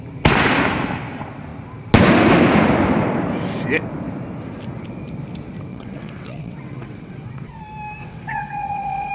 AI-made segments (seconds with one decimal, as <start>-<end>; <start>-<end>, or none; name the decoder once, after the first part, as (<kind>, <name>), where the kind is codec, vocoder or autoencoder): 5.7-7.6 (vocoder, WaveNeXt); 8.0-9.1